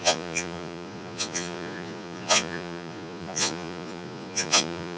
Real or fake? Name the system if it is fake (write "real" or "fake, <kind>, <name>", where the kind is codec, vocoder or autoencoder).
fake, vocoder, Vocos